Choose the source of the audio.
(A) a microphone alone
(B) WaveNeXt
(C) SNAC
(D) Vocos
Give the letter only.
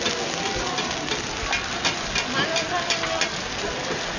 A